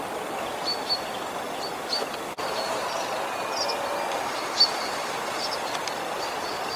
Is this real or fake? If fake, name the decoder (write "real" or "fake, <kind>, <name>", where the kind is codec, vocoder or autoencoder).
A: real